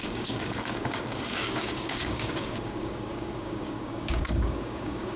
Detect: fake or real fake